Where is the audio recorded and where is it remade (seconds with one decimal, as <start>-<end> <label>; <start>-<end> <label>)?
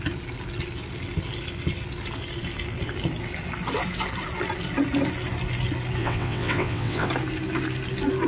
0.0-6.0 recorded; 6.0-7.1 remade; 7.1-8.3 recorded